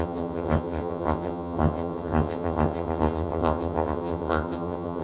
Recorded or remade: remade